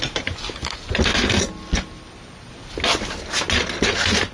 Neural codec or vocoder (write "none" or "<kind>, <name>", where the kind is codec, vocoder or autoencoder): none